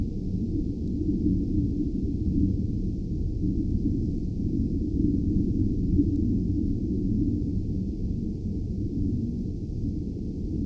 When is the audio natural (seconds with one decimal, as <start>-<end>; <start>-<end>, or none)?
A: 0.0-4.2; 5.7-10.7